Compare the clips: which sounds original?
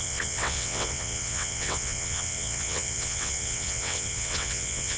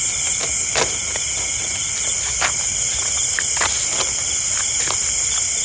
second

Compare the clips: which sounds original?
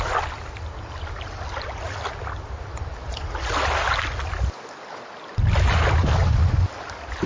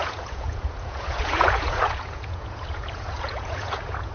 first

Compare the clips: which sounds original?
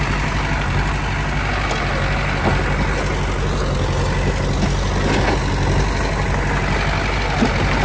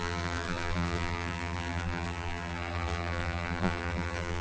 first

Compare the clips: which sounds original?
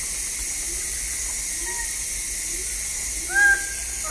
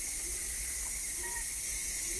first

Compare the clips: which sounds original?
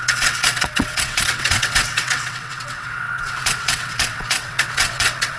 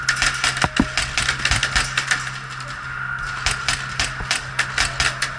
second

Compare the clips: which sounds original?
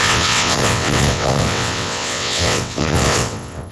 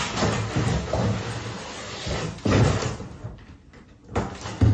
second